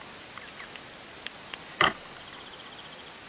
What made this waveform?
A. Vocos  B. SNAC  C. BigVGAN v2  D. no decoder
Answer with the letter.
D